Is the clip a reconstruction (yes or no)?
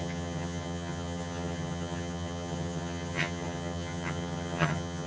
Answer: yes